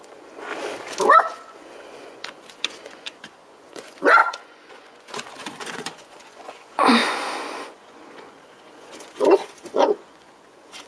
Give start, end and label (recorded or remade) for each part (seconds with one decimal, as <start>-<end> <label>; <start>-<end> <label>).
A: 0.0-0.5 remade; 0.5-1.1 recorded; 1.1-10.9 remade